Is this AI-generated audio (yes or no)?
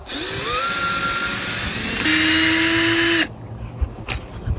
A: no